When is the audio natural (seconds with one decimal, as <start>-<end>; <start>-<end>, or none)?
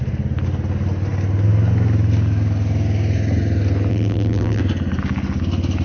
0.0-3.9; 4.6-5.8